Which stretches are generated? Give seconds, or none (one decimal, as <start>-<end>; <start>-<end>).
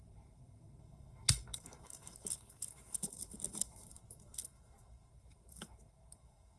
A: 0.0-6.6